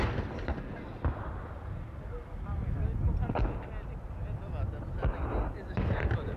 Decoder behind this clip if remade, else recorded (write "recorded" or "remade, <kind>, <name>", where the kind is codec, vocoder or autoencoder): recorded